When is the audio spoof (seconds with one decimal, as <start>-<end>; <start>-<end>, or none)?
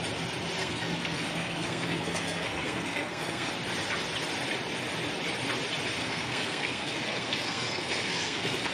0.6-3.5; 6.0-8.7